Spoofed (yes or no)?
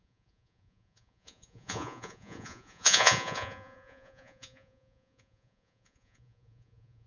yes